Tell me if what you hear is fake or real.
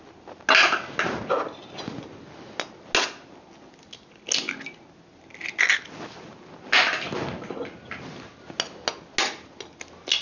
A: real